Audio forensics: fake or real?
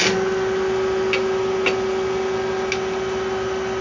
real